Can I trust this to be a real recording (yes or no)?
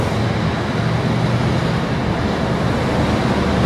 yes